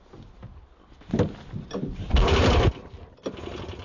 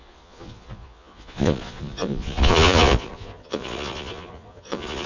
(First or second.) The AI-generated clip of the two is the second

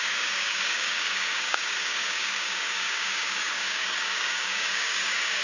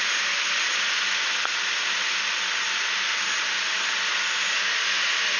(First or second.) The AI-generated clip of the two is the first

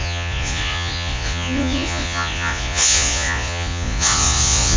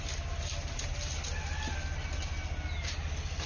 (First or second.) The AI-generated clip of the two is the first